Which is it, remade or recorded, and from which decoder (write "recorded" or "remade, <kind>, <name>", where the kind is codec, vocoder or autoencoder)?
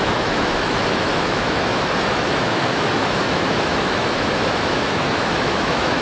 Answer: remade, autoencoder, DAC-VAE